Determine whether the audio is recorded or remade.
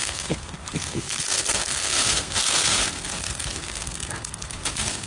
remade